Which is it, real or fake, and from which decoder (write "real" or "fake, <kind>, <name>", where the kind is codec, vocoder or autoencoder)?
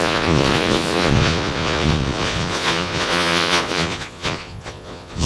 fake, vocoder, Vocos